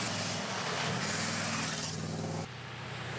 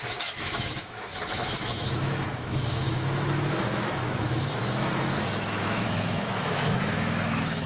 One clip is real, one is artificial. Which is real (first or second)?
first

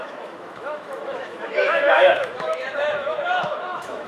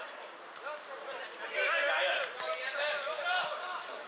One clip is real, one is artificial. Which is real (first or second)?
second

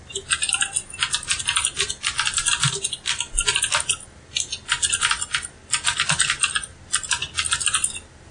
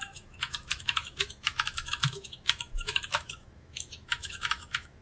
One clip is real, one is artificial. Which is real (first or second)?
first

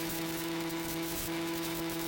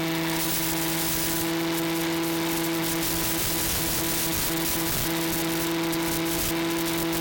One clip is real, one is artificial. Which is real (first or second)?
second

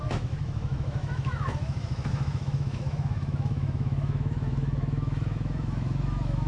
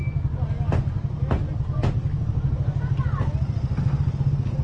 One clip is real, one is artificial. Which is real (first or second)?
second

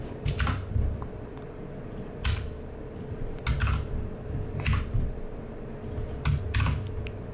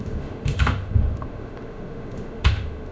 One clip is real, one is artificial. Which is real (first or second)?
first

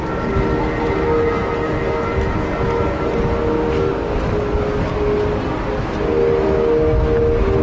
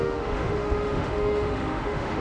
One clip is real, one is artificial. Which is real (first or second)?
first